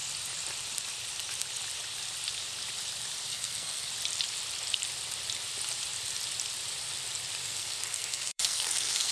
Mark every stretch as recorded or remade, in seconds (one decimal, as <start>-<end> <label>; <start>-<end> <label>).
0.0-3.3 recorded; 3.3-3.9 remade; 3.9-7.4 recorded; 7.4-9.1 remade